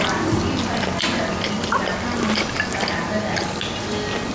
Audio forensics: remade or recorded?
recorded